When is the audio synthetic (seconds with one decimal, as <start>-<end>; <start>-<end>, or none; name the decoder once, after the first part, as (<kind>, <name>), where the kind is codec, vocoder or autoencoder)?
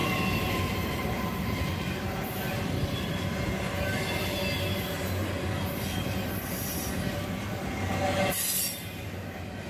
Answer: 0.0-1.2 (vocoder, BigVGAN v2)